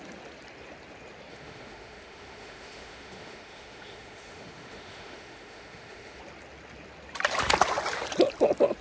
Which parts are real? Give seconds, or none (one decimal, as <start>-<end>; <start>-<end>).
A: 0.0-1.3; 6.2-8.8